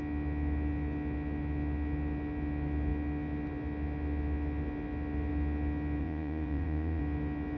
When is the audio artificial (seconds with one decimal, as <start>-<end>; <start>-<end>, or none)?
6.0-7.0